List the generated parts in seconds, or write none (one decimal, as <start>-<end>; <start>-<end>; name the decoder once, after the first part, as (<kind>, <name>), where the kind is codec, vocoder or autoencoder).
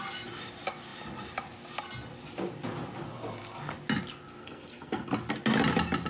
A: 4.4-5.1 (codec, SNAC)